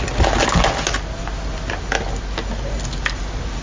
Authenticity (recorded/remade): recorded